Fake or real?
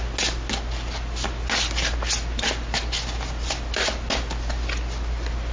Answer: real